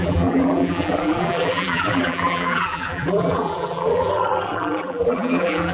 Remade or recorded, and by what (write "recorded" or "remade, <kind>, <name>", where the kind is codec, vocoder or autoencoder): remade, vocoder, BigVGAN v2